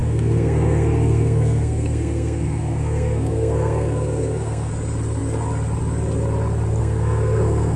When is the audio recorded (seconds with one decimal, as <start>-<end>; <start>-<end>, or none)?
4.7-6.8